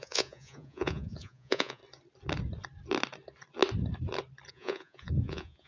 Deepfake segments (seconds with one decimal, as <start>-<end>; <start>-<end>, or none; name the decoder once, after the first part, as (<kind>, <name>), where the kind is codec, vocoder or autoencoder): 0.0-1.8 (vocoder, Vocos); 4.5-5.7